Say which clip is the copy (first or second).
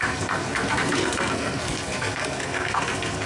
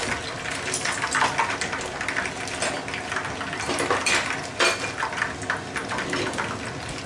first